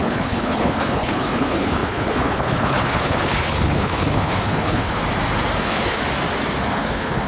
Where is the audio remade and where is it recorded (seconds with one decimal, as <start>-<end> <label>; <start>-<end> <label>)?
0.0-5.0 remade; 5.0-5.6 recorded; 5.6-6.0 remade; 6.0-6.7 recorded; 6.7-7.3 remade